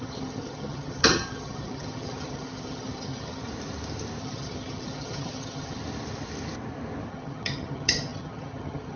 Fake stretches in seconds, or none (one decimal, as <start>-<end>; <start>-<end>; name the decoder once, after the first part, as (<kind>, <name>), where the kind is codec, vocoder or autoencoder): 0.0-3.4 (vocoder, HiFi-GAN); 4.2-5.8; 7.1-9.0